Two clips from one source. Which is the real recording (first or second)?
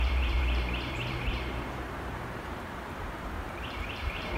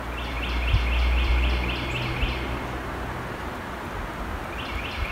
second